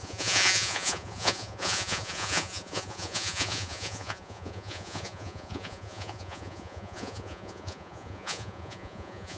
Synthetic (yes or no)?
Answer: yes